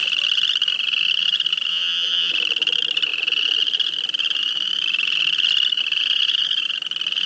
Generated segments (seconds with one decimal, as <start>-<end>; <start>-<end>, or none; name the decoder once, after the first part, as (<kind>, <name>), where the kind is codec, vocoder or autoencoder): 1.7-2.3 (vocoder, HiFi-GAN)

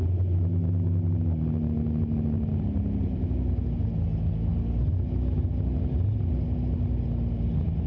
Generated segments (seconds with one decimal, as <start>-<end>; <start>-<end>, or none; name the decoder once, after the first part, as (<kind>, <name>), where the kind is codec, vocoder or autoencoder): none

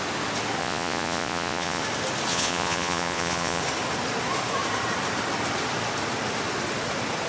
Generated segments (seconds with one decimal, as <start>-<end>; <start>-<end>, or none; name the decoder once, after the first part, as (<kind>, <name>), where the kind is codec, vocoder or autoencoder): 0.6-1.8 (vocoder, Vocos); 2.3-3.6

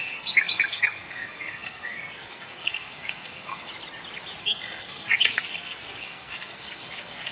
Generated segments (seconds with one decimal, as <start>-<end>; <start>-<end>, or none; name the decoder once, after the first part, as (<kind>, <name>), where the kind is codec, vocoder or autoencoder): 0.0-3.7 (codec, SNAC); 4.4-7.3

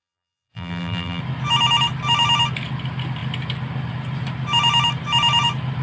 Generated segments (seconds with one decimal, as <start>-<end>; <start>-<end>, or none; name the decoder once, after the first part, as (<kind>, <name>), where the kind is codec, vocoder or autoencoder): 0.0-1.2 (vocoder, BigVGAN v2)